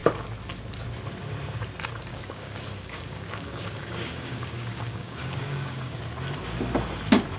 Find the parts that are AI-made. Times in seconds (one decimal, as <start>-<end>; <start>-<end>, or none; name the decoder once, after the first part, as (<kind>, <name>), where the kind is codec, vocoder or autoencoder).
2.1-6.0 (codec, DAC)